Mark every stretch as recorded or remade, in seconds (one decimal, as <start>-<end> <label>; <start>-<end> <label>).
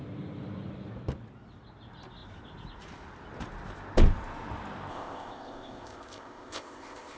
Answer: 0.0-4.9 recorded; 4.9-7.2 remade